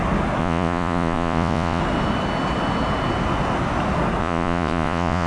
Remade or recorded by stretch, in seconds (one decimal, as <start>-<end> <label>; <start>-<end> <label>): 0.0-0.4 recorded; 0.4-1.8 remade; 1.8-4.2 recorded; 4.2-5.3 remade